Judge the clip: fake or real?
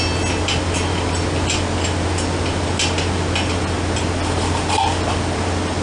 real